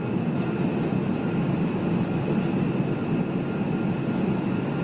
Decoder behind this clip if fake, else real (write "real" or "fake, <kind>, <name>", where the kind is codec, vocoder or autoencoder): real